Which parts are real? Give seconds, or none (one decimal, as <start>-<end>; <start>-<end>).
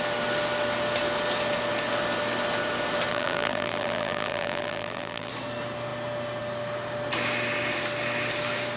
0.0-3.1; 5.3-8.8